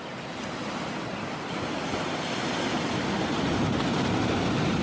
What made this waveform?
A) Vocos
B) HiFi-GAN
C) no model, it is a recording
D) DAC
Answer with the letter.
C